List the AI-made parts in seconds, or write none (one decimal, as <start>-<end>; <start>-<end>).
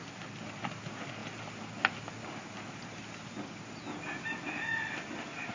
none